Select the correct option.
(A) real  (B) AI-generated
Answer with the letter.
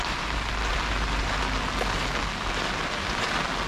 A